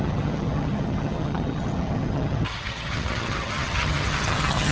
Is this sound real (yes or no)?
no